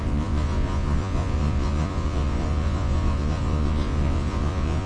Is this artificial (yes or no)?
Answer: yes